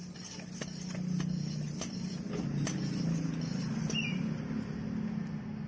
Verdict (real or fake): real